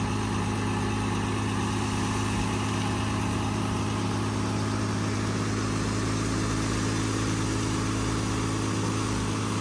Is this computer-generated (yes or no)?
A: no